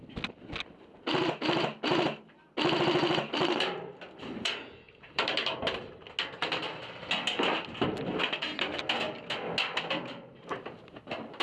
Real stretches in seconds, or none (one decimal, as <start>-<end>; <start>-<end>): 0.0-3.0; 6.0-11.4